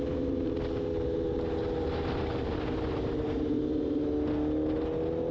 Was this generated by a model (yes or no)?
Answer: no